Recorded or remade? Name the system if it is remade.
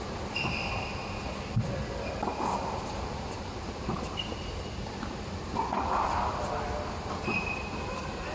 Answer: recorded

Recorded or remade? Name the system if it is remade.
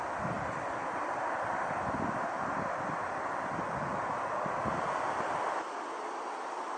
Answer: recorded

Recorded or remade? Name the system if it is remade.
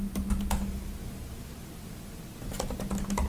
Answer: recorded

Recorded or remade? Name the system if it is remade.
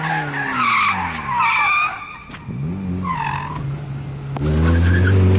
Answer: recorded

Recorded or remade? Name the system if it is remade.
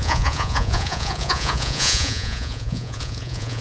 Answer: remade, vocoder, Vocos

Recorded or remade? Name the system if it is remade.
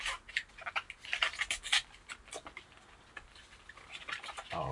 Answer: recorded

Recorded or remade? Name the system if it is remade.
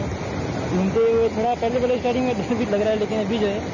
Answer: recorded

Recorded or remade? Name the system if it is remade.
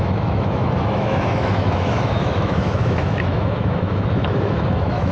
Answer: remade, autoencoder, DAC-VAE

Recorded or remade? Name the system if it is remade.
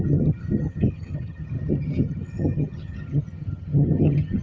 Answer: remade, vocoder, HiFi-GAN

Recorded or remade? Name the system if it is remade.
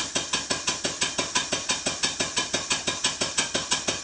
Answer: recorded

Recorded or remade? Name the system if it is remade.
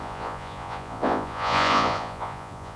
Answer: remade, vocoder, Vocos